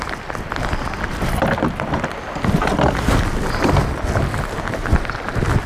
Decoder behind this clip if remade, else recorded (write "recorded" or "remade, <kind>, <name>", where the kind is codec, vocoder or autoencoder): recorded